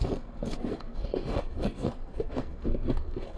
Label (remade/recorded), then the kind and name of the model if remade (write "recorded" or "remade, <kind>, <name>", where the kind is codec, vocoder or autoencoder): remade, codec, SNAC